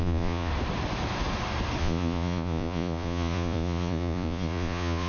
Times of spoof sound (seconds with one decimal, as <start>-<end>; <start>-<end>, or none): 0.0-0.5; 1.8-5.1